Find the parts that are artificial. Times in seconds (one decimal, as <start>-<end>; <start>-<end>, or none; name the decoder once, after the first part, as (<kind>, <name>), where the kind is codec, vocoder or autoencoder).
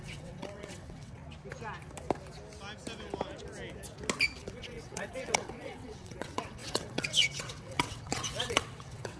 0.0-1.2 (vocoder, WaveNeXt); 4.4-9.2